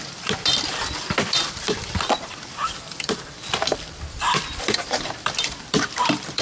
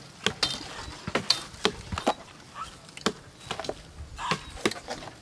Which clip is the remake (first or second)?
first